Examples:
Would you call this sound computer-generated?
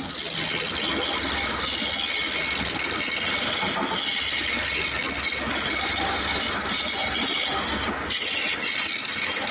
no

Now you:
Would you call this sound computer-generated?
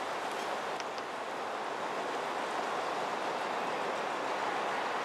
no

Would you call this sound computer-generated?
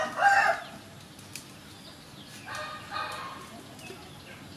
no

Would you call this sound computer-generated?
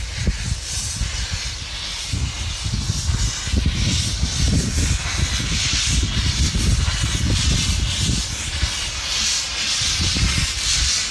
no